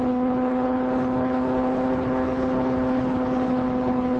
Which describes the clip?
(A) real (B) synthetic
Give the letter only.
B